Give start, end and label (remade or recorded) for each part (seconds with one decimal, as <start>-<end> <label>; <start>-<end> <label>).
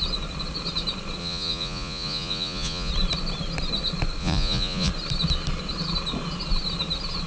0.0-1.2 recorded; 1.2-2.9 remade; 2.9-4.2 recorded; 4.2-4.9 remade; 4.9-7.3 recorded